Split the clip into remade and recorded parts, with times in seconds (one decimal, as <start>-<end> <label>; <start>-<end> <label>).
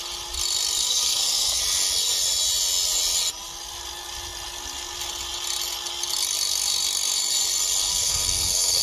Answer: 0.0-0.8 recorded; 0.8-1.6 remade; 1.6-7.9 recorded; 7.9-8.8 remade